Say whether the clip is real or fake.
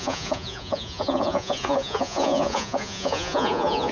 fake